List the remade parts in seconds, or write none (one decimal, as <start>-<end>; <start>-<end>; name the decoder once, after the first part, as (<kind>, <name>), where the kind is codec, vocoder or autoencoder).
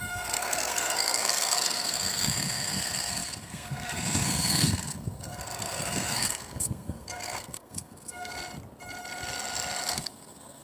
0.0-8.3 (codec, SNAC); 9.9-10.6